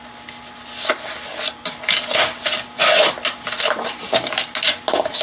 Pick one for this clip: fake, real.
real